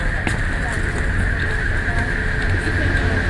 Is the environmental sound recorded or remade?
recorded